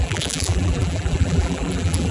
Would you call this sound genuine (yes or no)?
no